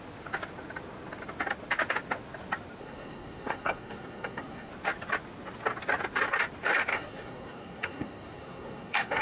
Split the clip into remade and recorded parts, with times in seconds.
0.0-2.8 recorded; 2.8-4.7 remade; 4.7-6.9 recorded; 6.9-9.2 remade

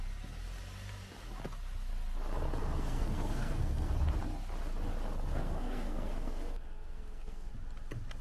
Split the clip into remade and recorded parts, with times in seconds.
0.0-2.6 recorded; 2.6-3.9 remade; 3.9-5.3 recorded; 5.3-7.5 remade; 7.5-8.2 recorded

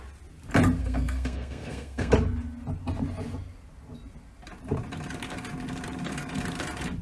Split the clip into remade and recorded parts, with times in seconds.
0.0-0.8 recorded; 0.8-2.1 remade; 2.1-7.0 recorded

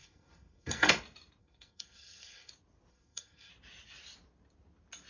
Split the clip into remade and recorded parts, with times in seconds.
0.0-0.9 remade; 0.9-1.4 recorded; 1.4-2.5 remade; 2.5-2.9 recorded; 2.9-3.5 remade; 3.5-5.1 recorded